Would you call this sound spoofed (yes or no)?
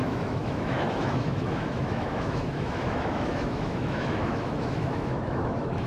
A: yes